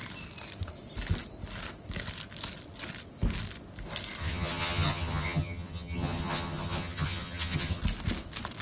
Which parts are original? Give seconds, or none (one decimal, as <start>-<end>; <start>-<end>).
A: 0.0-4.2; 7.8-8.6